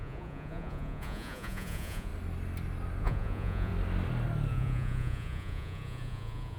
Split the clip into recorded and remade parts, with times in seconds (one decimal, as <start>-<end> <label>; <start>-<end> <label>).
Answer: 0.0-2.1 remade; 2.1-3.0 recorded; 3.0-3.7 remade; 3.7-4.5 recorded; 4.5-6.6 remade

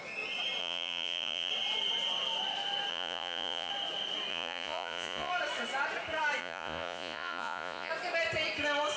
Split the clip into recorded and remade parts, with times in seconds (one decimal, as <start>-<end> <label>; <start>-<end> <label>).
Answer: 0.0-0.6 recorded; 0.6-1.5 remade; 1.5-2.9 recorded; 2.9-3.7 remade; 3.7-4.3 recorded; 4.3-5.3 remade; 5.3-6.4 recorded; 6.4-7.9 remade; 7.9-9.0 recorded

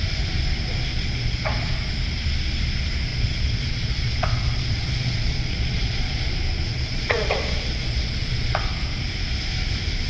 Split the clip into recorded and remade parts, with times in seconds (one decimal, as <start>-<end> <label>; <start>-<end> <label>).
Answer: 0.0-0.9 recorded; 0.9-1.6 remade; 1.6-3.1 recorded; 3.1-6.3 remade; 6.3-6.7 recorded; 6.7-8.7 remade; 8.7-10.1 recorded

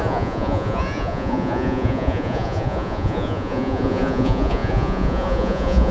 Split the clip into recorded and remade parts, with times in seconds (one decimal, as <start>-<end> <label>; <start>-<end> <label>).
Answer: 0.0-5.9 remade

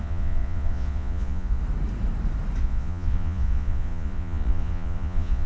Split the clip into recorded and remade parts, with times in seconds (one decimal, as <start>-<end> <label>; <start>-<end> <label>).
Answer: 0.0-1.6 remade; 1.6-2.6 recorded; 2.6-5.5 remade